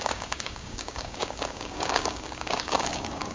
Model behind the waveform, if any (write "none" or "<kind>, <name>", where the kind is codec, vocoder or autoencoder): codec, DAC